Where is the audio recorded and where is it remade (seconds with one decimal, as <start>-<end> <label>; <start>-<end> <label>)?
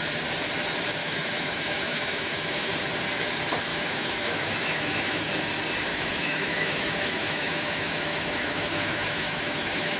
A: 0.0-1.0 recorded; 1.0-2.7 remade; 2.7-3.7 recorded; 3.7-5.3 remade; 5.3-5.9 recorded; 5.9-10.0 remade